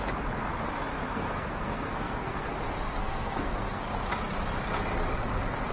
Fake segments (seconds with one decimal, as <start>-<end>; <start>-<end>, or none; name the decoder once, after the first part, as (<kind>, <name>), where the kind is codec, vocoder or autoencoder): 0.9-2.5 (codec, SNAC); 3.0-3.8